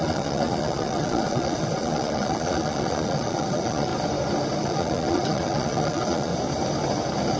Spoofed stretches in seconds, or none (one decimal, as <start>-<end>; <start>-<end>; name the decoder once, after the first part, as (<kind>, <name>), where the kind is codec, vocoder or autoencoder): 0.0-3.9 (vocoder, Vocos); 4.6-6.3